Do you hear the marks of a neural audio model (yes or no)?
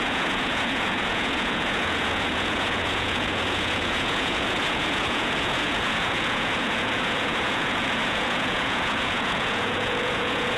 yes